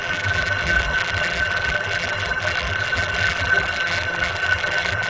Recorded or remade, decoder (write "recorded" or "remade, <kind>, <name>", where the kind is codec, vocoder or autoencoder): remade, vocoder, BigVGAN v2